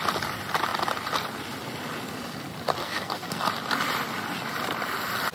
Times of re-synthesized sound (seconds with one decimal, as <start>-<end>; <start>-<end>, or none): 2.8-3.4